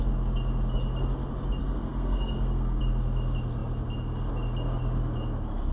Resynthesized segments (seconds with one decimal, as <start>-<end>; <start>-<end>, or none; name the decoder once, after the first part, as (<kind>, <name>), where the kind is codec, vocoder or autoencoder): 1.6-2.8 (codec, SNAC)